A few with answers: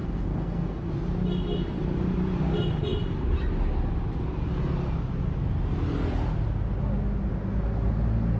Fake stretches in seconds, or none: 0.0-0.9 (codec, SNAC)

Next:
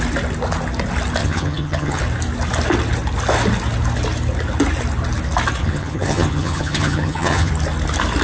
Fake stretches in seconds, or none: 1.2-2.0 (vocoder, HiFi-GAN); 5.6-7.5

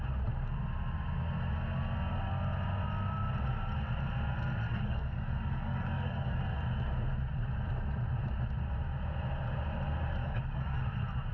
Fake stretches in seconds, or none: 4.7-6.4 (codec, DAC); 10.2-10.8

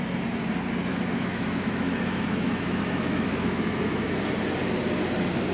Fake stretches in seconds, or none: 0.9-4.2 (autoencoder, DAC-VAE)

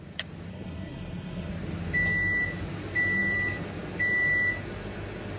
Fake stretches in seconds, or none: 0.5-1.5 (codec, SNAC)